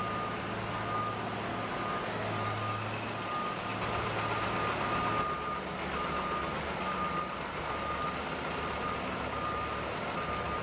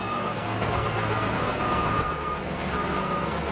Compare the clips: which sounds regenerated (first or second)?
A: second